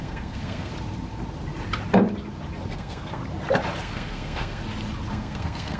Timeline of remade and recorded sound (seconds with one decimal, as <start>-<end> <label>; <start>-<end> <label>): 0.0-0.7 remade; 0.7-2.7 recorded; 2.7-3.2 remade; 3.2-3.8 recorded; 3.8-4.6 remade; 4.6-5.1 recorded; 5.1-5.8 remade